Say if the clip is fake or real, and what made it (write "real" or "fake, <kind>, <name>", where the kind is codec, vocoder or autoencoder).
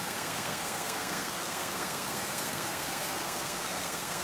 fake, codec, SNAC